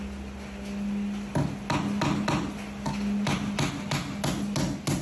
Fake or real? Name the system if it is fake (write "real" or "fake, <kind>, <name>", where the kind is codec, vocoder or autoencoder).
real